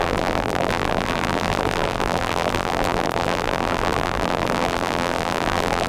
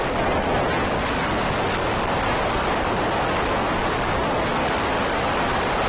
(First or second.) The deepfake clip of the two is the first